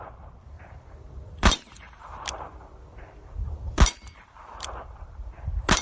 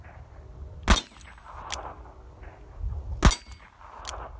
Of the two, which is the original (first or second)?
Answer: second